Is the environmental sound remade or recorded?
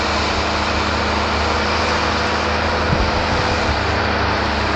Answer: recorded